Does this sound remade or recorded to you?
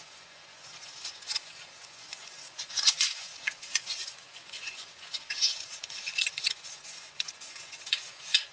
remade